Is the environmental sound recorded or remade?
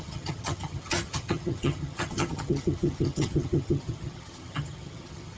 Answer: remade